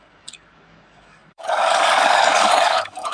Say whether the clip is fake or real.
fake